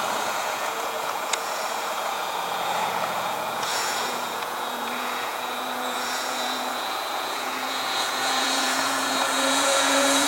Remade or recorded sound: remade